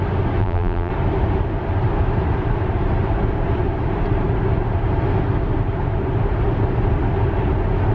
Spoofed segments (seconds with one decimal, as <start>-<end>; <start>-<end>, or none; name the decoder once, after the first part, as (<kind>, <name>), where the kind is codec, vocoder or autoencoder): 0.4-0.9 (vocoder, BigVGAN v2)